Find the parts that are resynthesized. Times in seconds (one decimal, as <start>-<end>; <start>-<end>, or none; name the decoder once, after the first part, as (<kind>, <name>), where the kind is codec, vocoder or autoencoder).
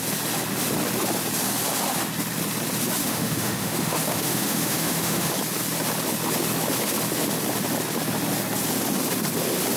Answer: 3.0-5.3 (autoencoder, DAC-VAE)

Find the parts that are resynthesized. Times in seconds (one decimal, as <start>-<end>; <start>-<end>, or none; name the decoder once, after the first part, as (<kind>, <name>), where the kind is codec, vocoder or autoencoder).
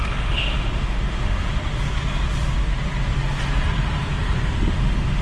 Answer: 0.0-1.6 (autoencoder, DAC-VAE); 4.7-5.2